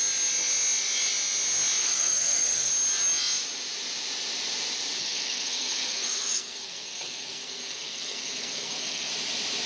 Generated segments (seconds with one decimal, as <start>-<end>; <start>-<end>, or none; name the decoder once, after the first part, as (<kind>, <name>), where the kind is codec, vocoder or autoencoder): 1.8-2.7 (codec, SNAC); 5.0-9.1